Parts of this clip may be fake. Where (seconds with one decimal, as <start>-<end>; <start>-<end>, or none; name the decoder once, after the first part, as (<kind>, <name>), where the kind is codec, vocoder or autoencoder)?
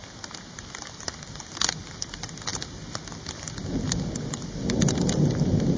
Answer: none